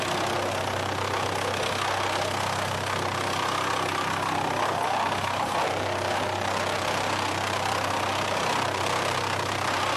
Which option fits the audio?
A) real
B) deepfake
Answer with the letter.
A